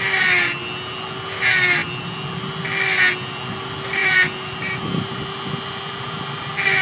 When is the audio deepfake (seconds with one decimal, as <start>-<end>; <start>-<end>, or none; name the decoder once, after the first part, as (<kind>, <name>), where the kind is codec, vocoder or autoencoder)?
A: 4.0-5.0 (vocoder, BigVGAN v2)